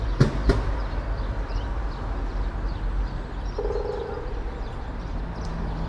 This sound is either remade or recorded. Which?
recorded